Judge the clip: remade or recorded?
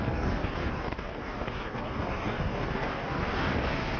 remade